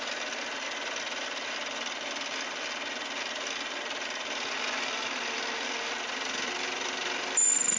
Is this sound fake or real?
real